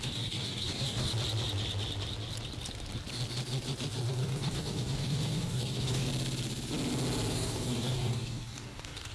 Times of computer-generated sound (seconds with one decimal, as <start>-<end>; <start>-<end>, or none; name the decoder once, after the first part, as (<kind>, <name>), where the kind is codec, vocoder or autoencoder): 0.0-1.1 (codec, DAC); 4.1-6.1; 7.3-9.1